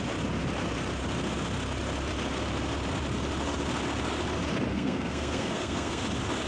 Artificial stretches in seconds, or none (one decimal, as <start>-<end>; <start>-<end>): 4.7-6.0